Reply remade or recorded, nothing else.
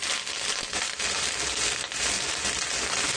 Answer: recorded